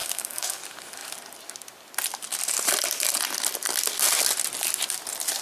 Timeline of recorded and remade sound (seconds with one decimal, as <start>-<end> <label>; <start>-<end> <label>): 0.0-0.6 remade; 0.6-5.4 recorded